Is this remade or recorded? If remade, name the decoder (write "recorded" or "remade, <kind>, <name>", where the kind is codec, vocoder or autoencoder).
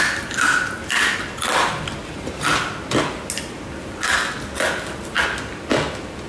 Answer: recorded